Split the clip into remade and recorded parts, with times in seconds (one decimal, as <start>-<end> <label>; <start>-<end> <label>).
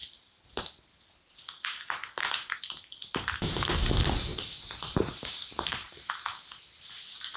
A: 0.0-0.6 remade; 0.6-4.3 recorded; 4.3-6.1 remade; 6.1-7.4 recorded